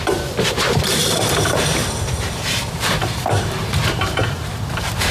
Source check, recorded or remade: remade